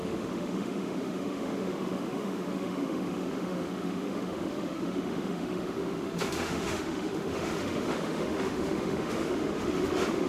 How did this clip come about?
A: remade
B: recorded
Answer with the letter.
A